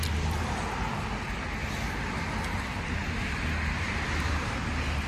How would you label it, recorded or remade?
recorded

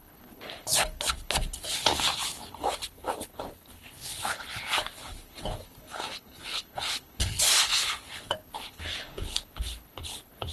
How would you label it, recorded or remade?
remade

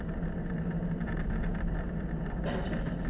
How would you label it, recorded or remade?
recorded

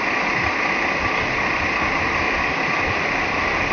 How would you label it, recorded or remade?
recorded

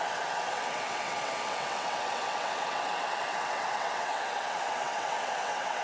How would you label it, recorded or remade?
remade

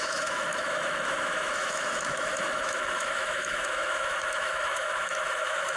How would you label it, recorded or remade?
remade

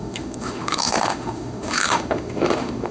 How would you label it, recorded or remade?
remade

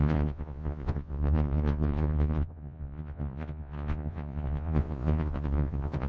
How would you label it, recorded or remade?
remade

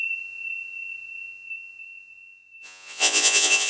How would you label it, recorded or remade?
remade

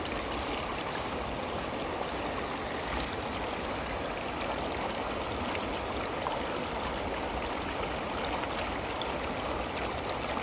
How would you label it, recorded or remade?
recorded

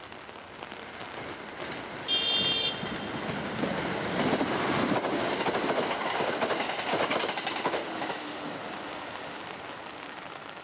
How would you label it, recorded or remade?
recorded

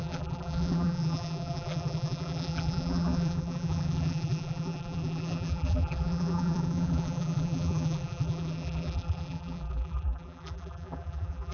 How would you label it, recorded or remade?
remade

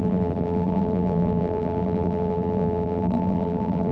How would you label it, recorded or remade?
remade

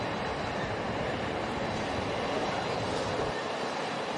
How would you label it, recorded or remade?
remade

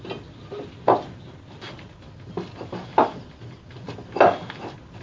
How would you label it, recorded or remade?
recorded